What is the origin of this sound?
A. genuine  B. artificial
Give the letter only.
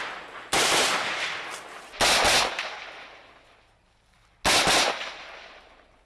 A